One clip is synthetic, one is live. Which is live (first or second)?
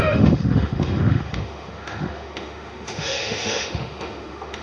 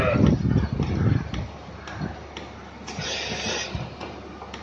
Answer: second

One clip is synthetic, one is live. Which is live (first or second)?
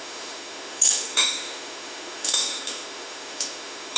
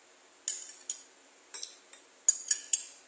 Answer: second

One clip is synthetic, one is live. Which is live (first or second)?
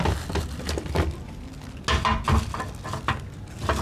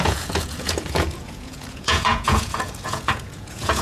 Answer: first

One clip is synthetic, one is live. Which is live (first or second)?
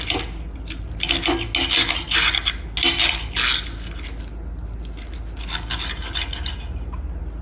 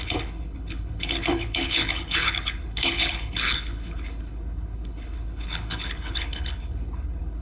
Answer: first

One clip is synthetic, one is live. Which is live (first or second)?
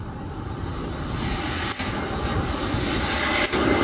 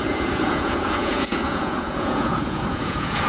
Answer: first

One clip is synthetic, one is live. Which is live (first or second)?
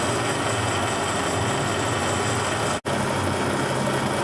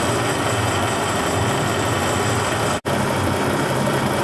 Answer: first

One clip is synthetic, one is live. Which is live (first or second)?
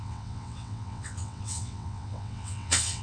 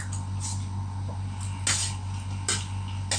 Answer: second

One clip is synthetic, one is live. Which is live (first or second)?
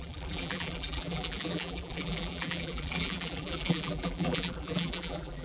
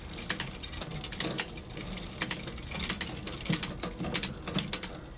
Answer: second